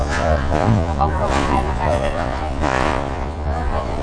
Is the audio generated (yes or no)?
yes